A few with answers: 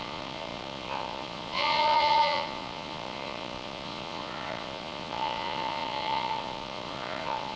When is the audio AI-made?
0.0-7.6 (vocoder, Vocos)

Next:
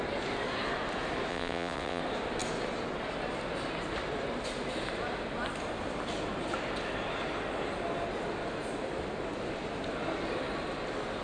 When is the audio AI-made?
1.3-2.0 (vocoder, WaveNeXt)

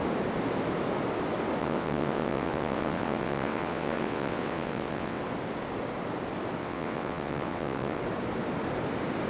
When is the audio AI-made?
1.6-5.2 (vocoder, WaveNeXt); 6.6-8.0

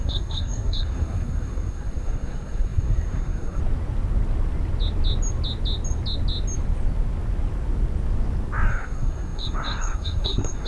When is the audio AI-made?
0.0-3.6 (codec, SNAC); 8.7-10.7

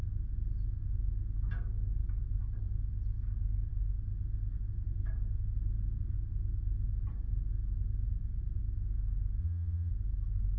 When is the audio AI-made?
9.4-9.9 (vocoder, Vocos)

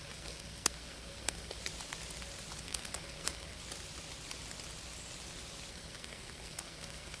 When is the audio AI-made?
0.0-1.6 (codec, SNAC); 2.6-3.6; 5.7-7.2

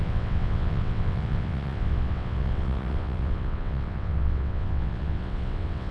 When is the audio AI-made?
0.0-5.9 (vocoder, WaveNeXt)

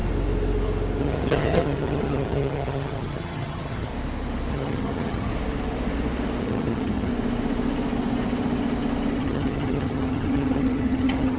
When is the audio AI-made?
1.0-3.9 (vocoder, HiFi-GAN); 4.5-5.3; 6.4-7.1; 9.2-11.4